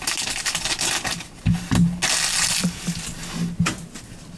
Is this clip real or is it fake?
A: real